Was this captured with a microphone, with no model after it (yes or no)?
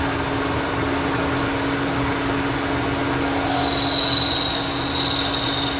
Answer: yes